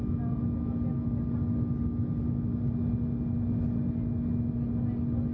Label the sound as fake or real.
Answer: real